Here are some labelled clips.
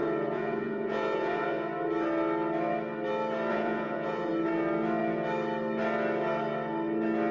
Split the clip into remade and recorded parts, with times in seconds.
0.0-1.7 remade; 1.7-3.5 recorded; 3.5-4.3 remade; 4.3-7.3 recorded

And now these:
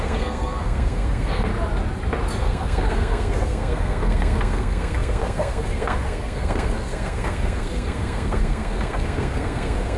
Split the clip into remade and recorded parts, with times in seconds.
0.0-1.5 remade; 1.5-2.4 recorded; 2.4-10.0 remade

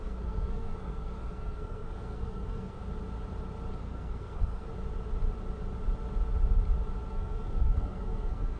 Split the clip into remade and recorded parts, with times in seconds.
0.0-2.8 remade; 2.8-3.8 recorded; 3.8-4.7 remade; 4.7-7.1 recorded; 7.1-8.6 remade

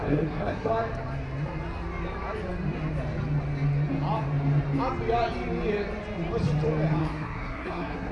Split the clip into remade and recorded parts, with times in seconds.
0.0-0.7 remade; 0.7-7.0 recorded; 7.0-8.1 remade